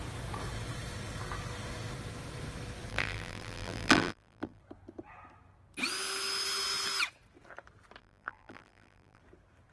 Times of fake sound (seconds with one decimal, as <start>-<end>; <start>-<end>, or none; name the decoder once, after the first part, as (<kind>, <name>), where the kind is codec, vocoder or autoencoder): 2.9-4.6 (vocoder, BigVGAN v2); 8.0-9.2